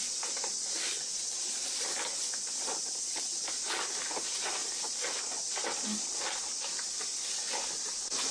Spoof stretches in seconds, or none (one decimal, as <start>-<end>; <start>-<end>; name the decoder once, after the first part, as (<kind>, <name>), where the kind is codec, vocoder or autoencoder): 4.6-5.2 (vocoder, BigVGAN v2)